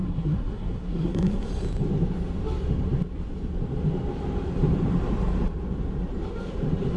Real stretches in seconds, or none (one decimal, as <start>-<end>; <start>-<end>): 1.5-7.0